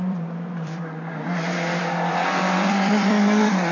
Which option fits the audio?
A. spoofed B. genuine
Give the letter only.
A